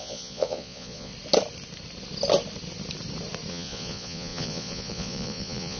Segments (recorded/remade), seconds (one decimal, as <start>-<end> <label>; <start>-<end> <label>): 0.0-1.1 remade; 1.1-3.5 recorded; 3.5-5.8 remade

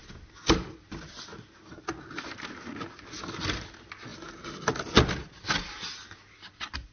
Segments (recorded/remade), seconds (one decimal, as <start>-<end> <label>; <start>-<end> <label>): 0.0-6.9 recorded

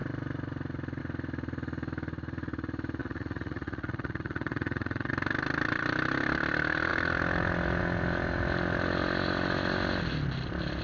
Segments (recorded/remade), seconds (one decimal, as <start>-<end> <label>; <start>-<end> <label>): 0.0-3.0 recorded; 3.0-5.1 remade; 5.1-10.8 recorded

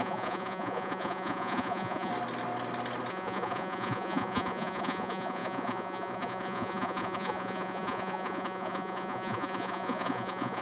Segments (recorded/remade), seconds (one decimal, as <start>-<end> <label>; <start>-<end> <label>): 0.0-2.1 remade; 2.1-3.1 recorded; 3.1-10.6 remade

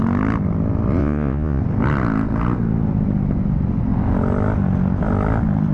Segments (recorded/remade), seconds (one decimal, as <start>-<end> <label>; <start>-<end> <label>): 0.0-1.0 recorded; 1.0-1.6 remade; 1.6-5.7 recorded

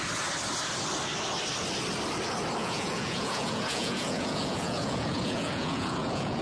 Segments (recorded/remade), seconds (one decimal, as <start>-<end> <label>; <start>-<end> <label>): 0.0-2.6 recorded; 2.6-6.4 remade

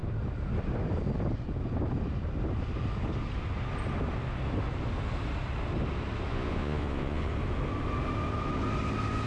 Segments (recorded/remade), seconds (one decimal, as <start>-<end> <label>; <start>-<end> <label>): 0.0-6.3 recorded; 6.3-7.3 remade; 7.3-9.3 recorded